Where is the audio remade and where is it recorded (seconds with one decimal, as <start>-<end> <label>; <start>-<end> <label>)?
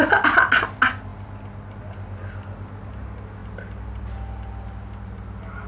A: 0.0-5.7 recorded